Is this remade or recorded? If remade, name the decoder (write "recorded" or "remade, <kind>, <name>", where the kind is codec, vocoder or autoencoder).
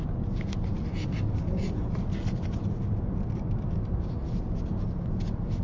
recorded